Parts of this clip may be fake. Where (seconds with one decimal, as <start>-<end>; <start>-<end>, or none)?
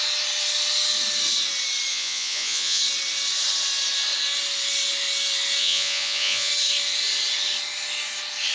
1.9-2.8; 5.6-6.5